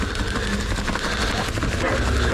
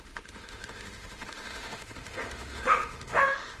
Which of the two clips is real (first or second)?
first